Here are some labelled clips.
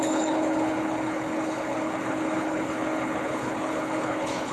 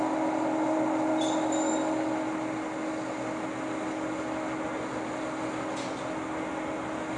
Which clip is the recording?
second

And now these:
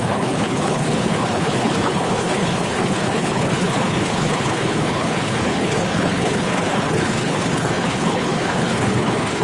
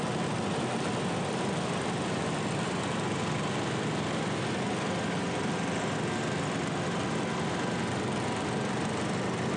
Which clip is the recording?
second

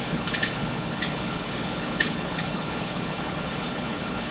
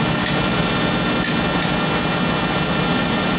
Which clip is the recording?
second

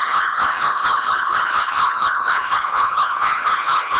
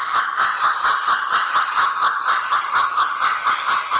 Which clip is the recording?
second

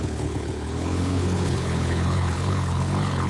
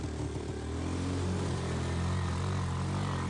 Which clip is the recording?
second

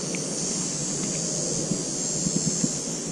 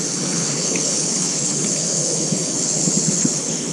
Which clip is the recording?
first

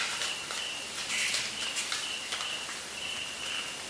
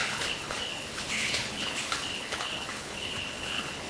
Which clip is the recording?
first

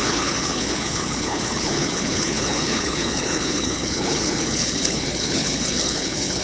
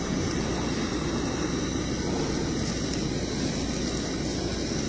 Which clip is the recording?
second